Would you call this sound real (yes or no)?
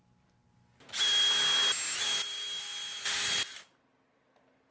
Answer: yes